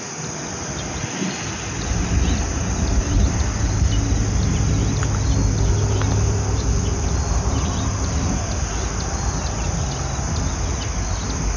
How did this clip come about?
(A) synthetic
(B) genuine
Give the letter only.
B